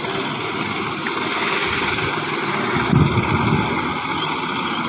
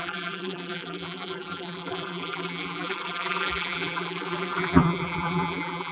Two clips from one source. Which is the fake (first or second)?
second